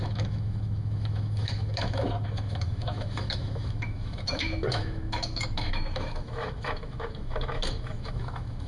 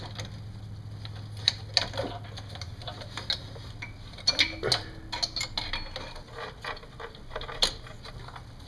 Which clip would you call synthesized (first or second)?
first